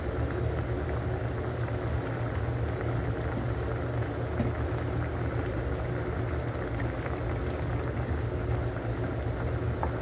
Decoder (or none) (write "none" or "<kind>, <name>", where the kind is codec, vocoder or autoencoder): none